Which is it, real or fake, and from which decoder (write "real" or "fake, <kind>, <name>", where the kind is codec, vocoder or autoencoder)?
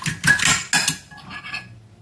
real